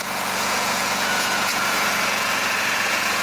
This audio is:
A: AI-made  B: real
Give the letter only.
A